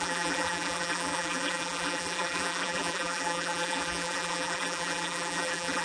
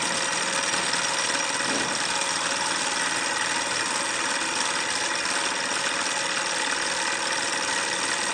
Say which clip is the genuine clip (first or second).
second